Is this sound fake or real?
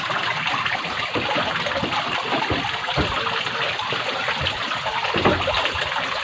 real